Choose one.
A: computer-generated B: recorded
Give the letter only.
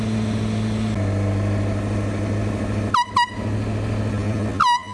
B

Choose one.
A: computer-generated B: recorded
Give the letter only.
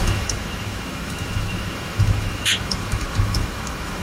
A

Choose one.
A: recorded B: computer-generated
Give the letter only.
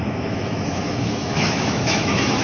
B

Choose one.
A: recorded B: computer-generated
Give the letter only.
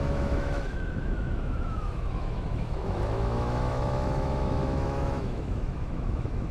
B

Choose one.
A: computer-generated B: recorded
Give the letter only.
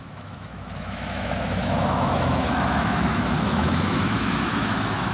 A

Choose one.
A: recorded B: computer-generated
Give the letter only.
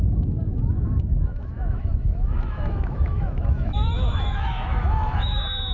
B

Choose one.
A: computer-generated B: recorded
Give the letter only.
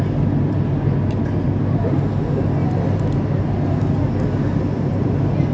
B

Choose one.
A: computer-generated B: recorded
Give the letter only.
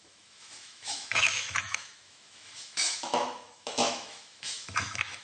A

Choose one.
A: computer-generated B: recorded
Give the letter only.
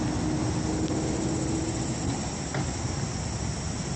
B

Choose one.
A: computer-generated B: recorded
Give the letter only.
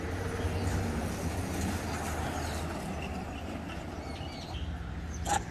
B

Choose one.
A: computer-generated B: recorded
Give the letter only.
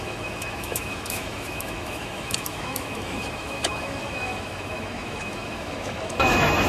A